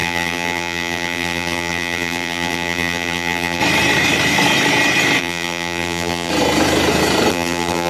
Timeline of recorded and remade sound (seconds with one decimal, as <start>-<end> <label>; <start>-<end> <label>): 0.0-3.6 remade; 3.6-5.2 recorded; 5.2-6.3 remade; 6.3-7.3 recorded; 7.3-7.9 remade